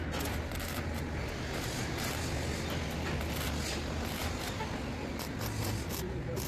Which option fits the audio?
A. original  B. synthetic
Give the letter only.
A